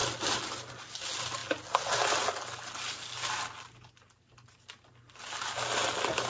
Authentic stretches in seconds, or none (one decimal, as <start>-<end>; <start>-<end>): 0.0-6.3